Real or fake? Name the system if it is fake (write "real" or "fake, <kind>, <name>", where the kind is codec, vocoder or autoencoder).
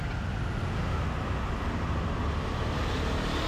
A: real